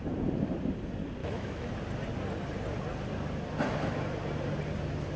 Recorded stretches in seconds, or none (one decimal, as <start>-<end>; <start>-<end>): 0.0-1.2; 1.7-5.2